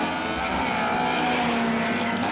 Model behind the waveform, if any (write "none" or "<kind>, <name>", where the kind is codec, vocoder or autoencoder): none